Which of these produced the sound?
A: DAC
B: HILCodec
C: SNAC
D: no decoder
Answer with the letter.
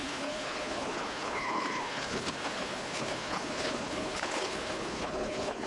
B